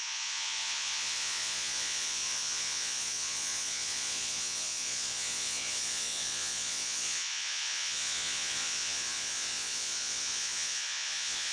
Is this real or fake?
fake